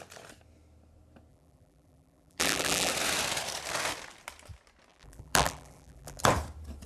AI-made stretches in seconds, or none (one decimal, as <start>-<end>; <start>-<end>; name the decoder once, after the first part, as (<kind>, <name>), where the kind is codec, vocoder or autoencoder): 1.3-2.9 (vocoder, BigVGAN v2); 4.9-6.2